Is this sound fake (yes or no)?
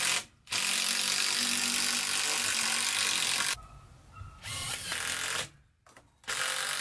no